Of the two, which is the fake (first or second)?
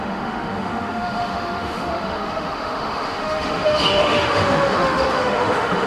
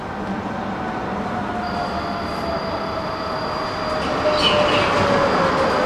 first